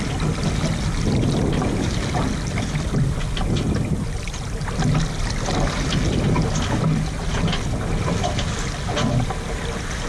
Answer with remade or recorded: recorded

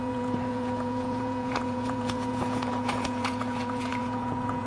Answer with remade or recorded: remade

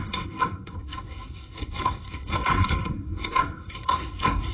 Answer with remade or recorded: remade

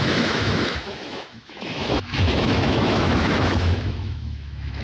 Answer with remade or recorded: remade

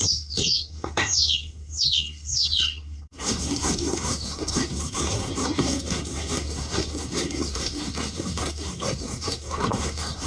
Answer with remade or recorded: remade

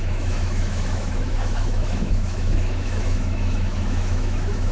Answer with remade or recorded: remade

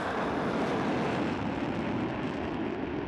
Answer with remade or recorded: recorded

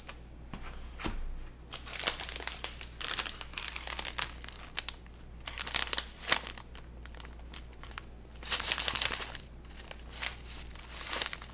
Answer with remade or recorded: recorded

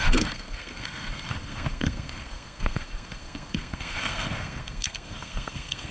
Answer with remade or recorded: remade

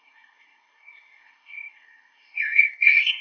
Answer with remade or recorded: remade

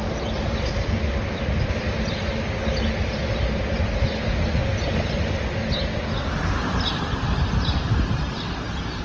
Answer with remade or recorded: recorded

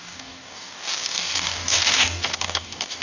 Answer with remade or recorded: remade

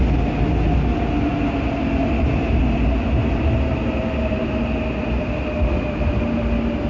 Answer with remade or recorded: recorded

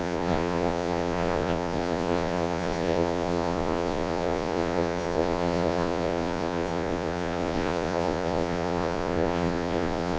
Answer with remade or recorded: remade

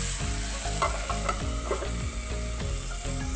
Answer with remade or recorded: recorded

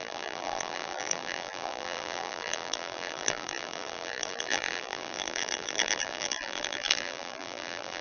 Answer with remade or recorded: remade